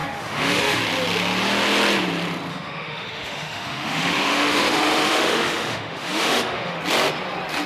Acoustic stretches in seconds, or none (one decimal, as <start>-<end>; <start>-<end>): 0.8-2.5; 6.8-7.7